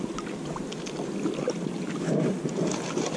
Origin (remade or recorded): recorded